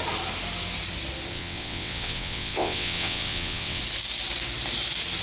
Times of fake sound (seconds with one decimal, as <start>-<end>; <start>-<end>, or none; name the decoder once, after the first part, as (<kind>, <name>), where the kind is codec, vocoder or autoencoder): 1.3-3.8 (vocoder, WaveNeXt)